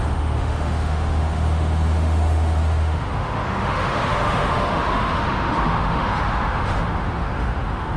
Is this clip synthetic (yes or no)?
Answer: yes